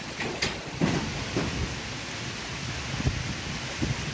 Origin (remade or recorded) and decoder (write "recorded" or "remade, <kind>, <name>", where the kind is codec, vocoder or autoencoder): recorded